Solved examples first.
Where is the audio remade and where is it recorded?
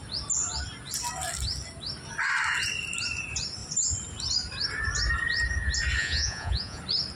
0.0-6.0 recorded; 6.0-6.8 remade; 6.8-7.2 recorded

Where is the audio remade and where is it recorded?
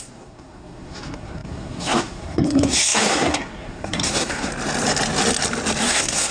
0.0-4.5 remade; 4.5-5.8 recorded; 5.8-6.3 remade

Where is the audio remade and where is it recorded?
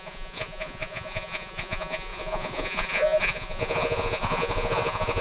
0.0-5.2 remade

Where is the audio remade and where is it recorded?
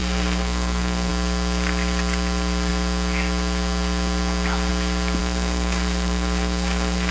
0.0-1.1 remade; 1.1-5.2 recorded; 5.2-7.1 remade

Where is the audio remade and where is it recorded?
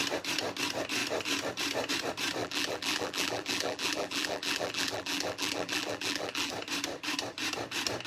0.0-2.4 recorded; 2.4-6.5 remade; 6.5-8.1 recorded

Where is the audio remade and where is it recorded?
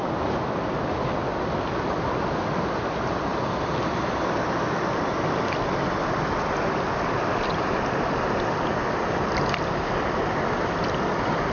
0.0-11.5 recorded